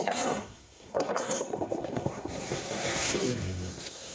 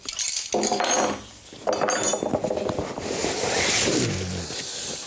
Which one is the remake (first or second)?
first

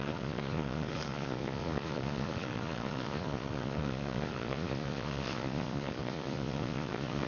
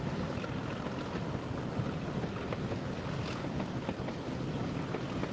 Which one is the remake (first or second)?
first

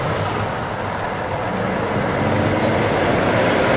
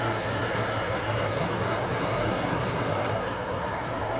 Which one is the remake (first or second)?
second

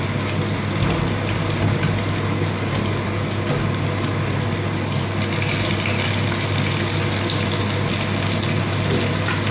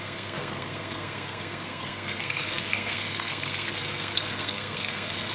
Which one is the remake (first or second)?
second